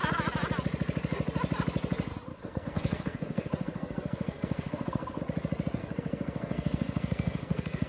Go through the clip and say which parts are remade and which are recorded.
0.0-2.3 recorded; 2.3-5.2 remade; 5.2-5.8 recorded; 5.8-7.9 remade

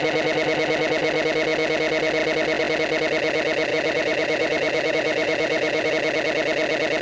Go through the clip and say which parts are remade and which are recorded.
0.0-3.7 recorded; 3.7-5.9 remade; 5.9-7.0 recorded

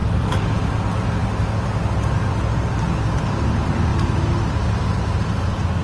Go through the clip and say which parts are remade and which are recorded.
0.0-0.6 remade; 0.6-5.8 recorded

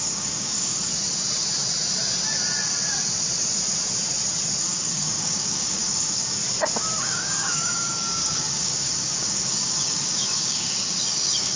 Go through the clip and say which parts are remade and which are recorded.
0.0-0.9 remade; 0.9-4.6 recorded; 4.6-6.4 remade; 6.4-7.0 recorded; 7.0-11.6 remade

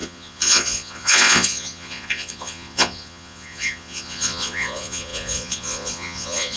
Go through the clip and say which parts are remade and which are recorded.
0.0-6.6 remade

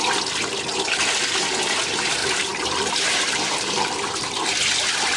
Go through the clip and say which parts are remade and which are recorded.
0.0-2.2 recorded; 2.2-4.4 remade; 4.4-5.2 recorded